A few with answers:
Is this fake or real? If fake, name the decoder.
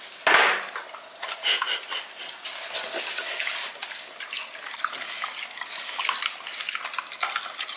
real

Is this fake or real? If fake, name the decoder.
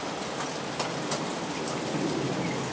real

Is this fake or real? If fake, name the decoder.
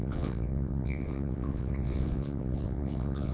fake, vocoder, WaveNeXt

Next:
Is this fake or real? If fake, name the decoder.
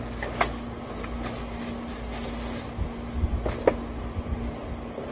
real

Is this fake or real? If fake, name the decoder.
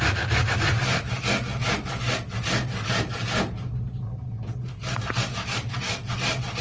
real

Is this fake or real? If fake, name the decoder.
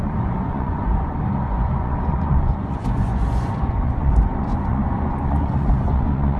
fake, vocoder, Vocos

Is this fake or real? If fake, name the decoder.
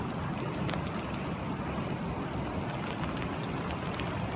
real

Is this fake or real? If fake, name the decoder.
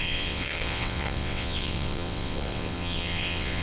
fake, vocoder, WaveNeXt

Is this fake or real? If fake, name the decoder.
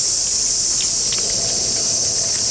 real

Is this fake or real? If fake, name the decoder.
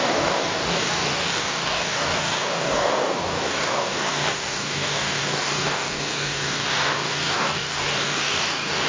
fake, codec, DAC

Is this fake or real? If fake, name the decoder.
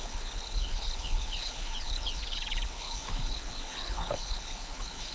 fake, codec, HILCodec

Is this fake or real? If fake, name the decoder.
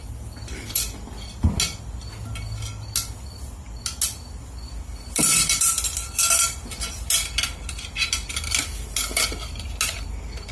real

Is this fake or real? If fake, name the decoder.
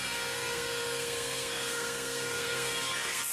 fake, codec, SNAC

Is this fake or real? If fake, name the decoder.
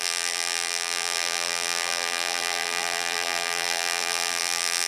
fake, vocoder, BigVGAN v2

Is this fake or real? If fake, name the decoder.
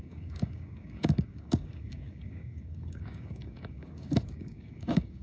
fake, codec, DAC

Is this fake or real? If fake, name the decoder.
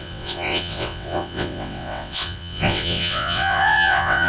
fake, vocoder, WaveNeXt